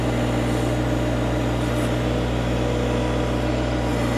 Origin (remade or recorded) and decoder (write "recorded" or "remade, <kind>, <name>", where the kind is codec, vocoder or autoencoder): recorded